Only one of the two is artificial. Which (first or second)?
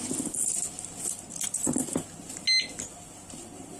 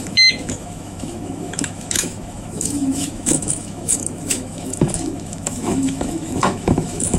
second